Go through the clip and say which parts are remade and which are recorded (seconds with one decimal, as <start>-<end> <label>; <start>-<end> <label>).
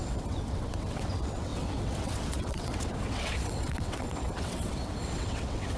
0.0-5.8 remade